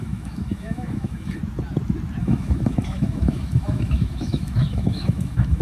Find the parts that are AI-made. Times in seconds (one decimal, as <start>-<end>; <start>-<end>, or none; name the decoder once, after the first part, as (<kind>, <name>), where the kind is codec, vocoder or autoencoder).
0.0-1.4 (autoencoder, DAC-VAE); 2.2-5.6

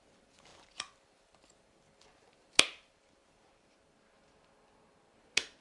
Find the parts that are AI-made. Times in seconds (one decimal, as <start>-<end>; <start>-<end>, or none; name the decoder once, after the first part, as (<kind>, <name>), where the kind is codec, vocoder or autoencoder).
none

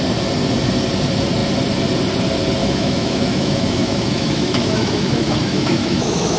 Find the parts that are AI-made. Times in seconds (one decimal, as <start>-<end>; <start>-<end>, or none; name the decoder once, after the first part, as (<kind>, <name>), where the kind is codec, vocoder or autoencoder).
2.6-6.4 (autoencoder, DAC-VAE)

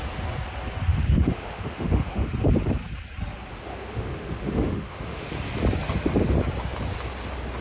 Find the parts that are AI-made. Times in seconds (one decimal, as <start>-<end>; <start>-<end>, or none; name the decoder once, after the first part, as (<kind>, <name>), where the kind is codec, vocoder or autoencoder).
0.9-2.3 (autoencoder, DAC-VAE); 3.5-5.3

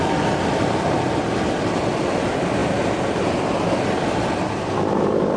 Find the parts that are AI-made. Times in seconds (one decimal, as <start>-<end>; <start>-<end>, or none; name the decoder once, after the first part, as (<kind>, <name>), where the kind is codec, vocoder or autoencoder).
none